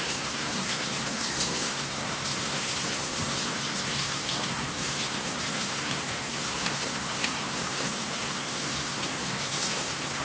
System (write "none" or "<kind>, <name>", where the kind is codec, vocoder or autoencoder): codec, SNAC